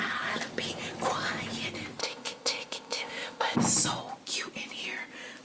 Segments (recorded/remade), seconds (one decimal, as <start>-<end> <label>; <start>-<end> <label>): 0.0-2.0 recorded; 2.0-3.6 remade; 3.6-5.4 recorded